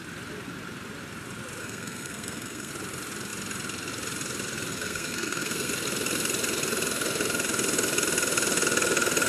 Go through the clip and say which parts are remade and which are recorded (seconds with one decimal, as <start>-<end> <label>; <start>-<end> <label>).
0.0-1.6 recorded; 1.6-2.7 remade; 2.7-4.7 recorded; 4.7-5.7 remade; 5.7-9.3 recorded